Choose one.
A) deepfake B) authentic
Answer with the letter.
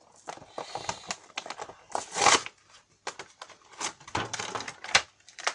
B